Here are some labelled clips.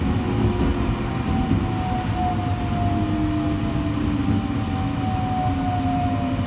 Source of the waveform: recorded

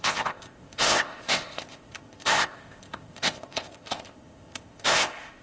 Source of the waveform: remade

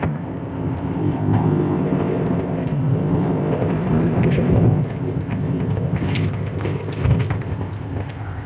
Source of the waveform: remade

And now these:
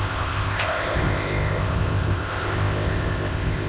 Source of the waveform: remade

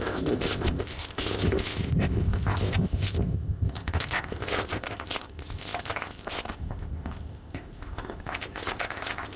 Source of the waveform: remade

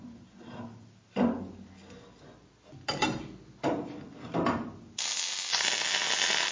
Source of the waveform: recorded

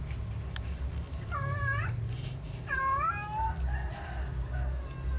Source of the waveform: recorded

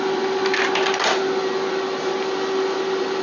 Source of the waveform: recorded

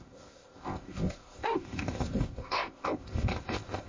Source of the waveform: remade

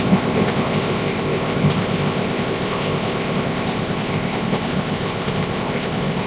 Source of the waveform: remade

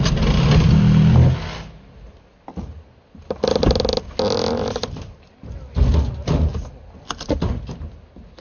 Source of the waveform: recorded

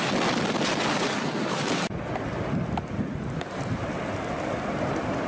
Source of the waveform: recorded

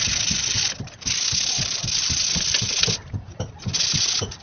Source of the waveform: recorded